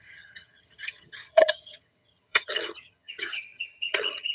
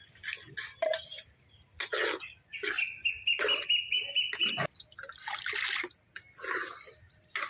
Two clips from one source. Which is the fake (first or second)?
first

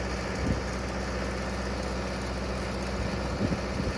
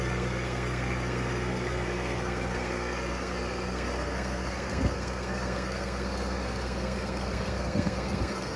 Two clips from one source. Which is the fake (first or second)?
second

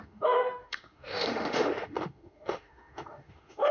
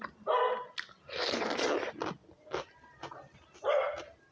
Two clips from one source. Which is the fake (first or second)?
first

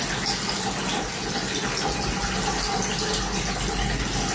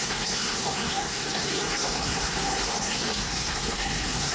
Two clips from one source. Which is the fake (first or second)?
second